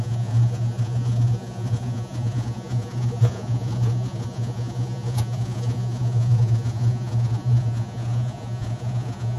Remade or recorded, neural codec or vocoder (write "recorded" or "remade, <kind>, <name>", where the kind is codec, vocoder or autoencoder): remade, vocoder, Vocos